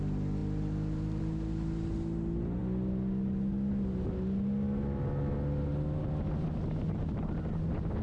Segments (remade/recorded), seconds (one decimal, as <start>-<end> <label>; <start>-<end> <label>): 0.0-8.0 recorded